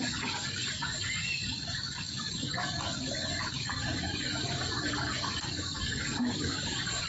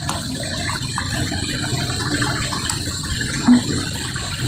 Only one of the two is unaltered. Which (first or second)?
second